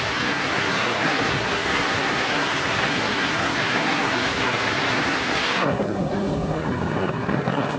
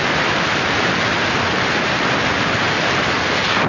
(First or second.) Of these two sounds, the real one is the second